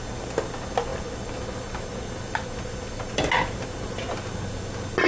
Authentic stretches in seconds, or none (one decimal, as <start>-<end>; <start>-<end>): 0.0-0.9; 4.0-5.1